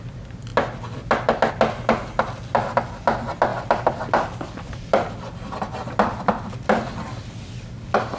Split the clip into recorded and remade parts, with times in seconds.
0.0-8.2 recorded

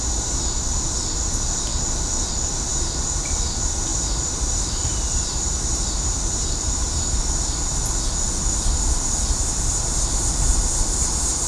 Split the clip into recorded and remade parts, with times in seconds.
0.0-2.7 recorded; 2.7-3.4 remade; 3.4-3.9 recorded; 3.9-7.2 remade; 7.2-11.5 recorded